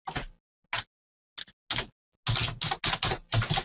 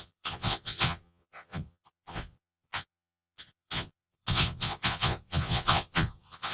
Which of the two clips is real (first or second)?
first